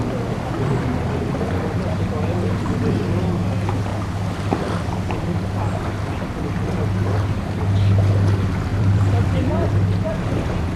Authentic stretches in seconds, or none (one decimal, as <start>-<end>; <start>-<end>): 0.0-8.7; 9.7-10.8